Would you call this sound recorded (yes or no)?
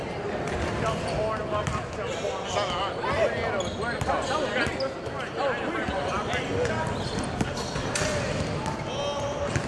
yes